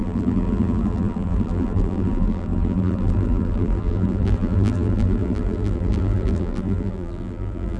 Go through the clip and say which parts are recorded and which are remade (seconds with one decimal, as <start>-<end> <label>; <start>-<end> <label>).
0.0-7.8 remade